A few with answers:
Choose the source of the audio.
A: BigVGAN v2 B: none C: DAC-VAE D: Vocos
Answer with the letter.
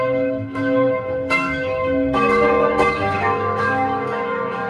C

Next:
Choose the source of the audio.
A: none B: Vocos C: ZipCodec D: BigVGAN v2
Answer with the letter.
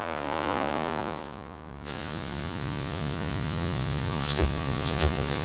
B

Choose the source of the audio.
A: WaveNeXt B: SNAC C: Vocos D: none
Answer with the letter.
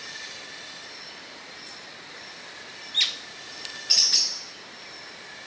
D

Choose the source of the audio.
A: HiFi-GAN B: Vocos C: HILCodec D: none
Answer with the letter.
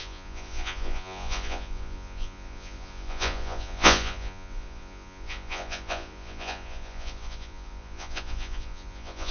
B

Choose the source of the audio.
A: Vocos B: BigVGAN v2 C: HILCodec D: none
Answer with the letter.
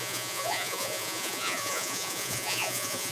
A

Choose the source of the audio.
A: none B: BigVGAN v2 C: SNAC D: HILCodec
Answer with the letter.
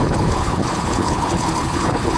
D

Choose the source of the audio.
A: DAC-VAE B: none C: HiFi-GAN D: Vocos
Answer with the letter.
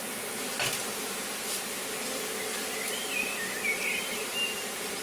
B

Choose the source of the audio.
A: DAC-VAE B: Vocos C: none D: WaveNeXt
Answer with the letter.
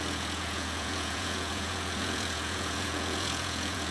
B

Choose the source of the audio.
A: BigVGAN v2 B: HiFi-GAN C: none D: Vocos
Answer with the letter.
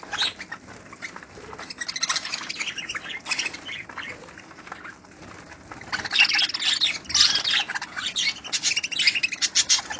C